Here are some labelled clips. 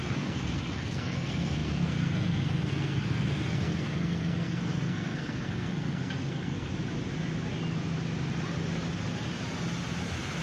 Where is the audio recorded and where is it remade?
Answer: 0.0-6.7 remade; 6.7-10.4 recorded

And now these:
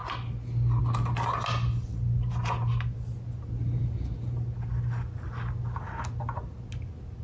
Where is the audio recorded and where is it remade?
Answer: 0.0-7.2 recorded

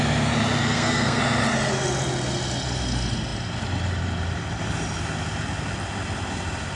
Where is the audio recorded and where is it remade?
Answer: 0.0-0.6 recorded; 0.6-1.2 remade; 1.2-6.8 recorded

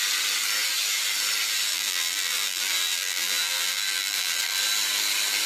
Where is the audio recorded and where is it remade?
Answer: 0.0-1.7 recorded; 1.7-4.6 remade; 4.6-5.5 recorded

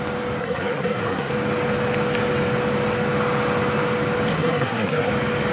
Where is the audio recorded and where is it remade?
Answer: 0.0-0.4 recorded; 0.4-1.3 remade; 1.3-4.3 recorded; 4.3-5.1 remade; 5.1-5.5 recorded

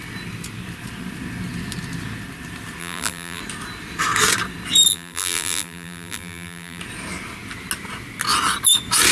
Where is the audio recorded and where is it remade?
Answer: 0.0-2.8 recorded; 2.8-3.4 remade; 3.4-4.9 recorded; 4.9-6.8 remade; 6.8-9.1 recorded

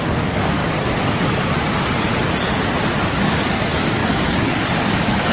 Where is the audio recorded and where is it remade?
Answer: 0.0-0.6 remade; 0.6-3.0 recorded; 3.0-5.3 remade

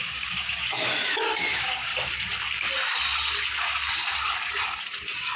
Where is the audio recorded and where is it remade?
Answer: 0.0-1.9 remade; 1.9-5.4 recorded